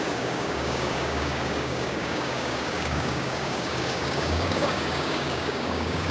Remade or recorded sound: remade